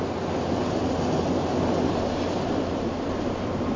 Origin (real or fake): real